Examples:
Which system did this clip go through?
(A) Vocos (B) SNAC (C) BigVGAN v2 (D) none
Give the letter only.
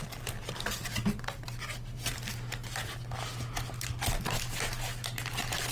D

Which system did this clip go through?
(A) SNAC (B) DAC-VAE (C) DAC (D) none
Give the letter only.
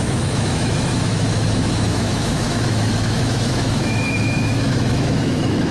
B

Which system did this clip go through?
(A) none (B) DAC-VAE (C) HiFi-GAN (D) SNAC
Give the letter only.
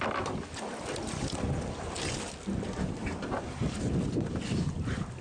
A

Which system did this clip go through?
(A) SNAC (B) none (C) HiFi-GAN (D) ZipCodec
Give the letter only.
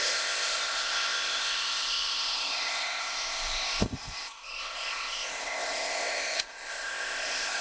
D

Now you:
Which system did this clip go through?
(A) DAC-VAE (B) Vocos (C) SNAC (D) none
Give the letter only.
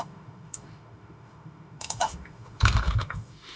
A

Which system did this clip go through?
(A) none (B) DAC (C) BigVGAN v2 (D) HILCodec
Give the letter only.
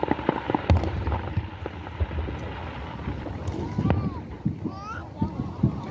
A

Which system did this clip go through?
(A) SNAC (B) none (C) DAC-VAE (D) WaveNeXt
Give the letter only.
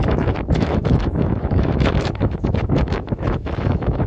C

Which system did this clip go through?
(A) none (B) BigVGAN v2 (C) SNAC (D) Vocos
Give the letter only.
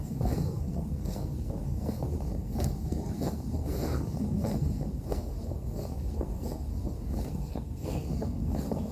C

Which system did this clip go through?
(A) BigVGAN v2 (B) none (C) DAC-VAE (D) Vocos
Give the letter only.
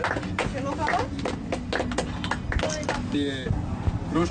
B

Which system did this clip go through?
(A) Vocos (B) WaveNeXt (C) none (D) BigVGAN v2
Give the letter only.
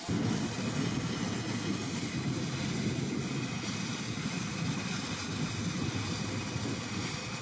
C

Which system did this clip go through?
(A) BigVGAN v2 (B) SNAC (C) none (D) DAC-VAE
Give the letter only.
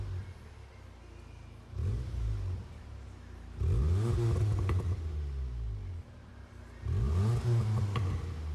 C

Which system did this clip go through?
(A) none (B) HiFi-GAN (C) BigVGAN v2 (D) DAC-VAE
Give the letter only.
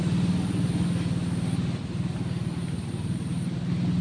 A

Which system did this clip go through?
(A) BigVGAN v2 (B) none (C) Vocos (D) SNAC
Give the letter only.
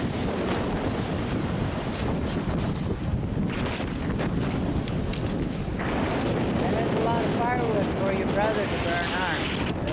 B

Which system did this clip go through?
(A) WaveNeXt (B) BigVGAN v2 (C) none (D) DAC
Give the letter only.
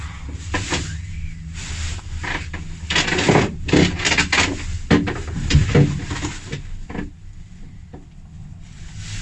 C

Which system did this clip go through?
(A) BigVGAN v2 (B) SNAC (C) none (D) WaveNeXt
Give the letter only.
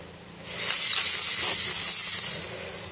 C